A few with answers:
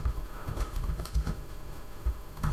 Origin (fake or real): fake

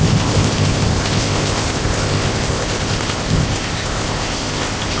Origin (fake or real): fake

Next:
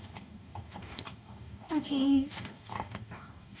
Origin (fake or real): fake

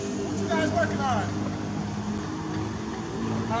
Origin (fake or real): real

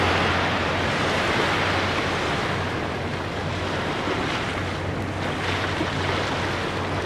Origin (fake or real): real